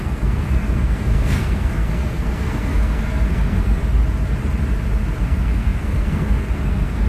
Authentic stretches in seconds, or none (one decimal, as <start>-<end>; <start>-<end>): 3.8-5.2